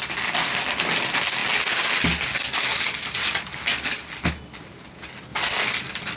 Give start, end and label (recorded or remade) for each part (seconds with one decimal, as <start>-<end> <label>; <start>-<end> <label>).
0.0-5.3 recorded; 5.3-6.2 remade